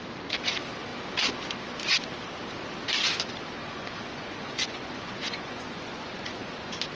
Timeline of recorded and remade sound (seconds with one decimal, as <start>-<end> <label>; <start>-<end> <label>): 0.0-3.6 recorded; 3.6-6.5 remade; 6.5-6.9 recorded